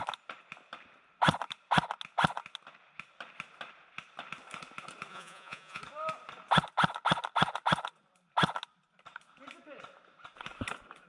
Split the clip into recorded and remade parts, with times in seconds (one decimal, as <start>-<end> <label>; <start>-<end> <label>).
0.0-5.1 recorded; 5.1-5.8 remade; 5.8-11.1 recorded